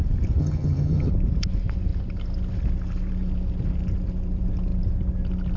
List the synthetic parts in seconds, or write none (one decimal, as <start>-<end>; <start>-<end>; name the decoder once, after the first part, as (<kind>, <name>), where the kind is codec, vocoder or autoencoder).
0.4-1.1 (vocoder, HiFi-GAN)